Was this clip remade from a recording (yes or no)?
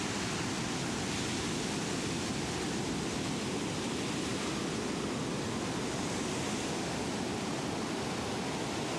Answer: no